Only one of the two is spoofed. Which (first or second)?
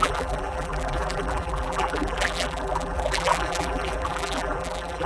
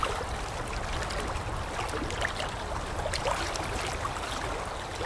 first